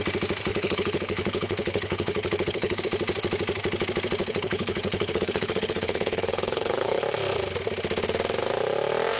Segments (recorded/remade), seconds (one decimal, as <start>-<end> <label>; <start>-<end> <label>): 0.0-0.5 recorded; 0.5-2.8 remade; 2.8-4.2 recorded; 4.2-7.0 remade; 7.0-9.2 recorded